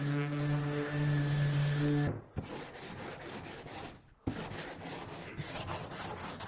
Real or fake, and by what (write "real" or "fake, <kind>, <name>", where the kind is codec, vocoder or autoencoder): real